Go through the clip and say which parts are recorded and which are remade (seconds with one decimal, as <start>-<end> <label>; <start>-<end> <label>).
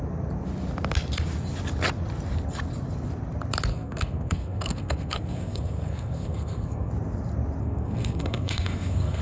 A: 0.0-3.7 recorded; 3.7-6.9 remade; 6.9-7.6 recorded; 7.6-9.2 remade